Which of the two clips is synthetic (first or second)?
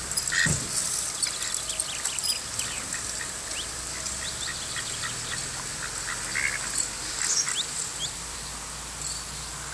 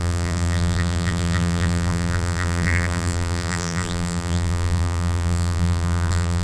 second